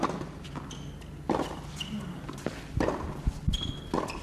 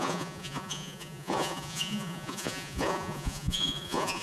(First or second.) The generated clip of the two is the second